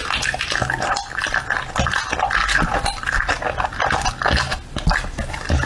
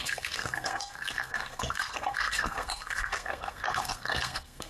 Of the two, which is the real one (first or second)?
first